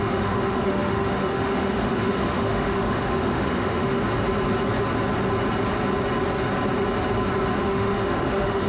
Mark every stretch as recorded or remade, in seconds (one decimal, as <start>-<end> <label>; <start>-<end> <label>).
0.0-4.0 remade; 4.0-7.6 recorded; 7.6-8.7 remade